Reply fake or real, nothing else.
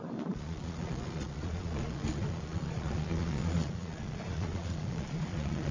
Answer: fake